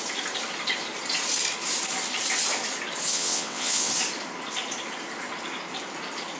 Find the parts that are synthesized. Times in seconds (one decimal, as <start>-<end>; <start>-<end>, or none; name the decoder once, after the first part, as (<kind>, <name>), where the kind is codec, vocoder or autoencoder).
3.1-3.9 (vocoder, WaveNeXt)